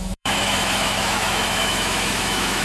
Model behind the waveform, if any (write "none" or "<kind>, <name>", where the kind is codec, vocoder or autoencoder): autoencoder, DAC-VAE